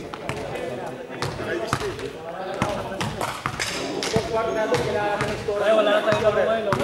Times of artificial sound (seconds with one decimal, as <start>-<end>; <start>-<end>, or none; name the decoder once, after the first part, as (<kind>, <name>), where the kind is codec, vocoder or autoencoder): 4.6-6.2 (autoencoder, DAC-VAE)